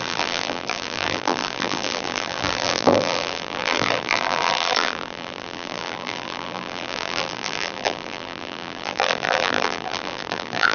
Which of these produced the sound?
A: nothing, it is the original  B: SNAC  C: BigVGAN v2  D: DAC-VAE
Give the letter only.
C